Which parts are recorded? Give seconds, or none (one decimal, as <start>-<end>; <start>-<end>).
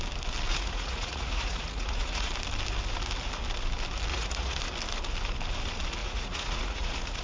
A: 0.0-0.5; 2.3-4.1; 4.6-6.0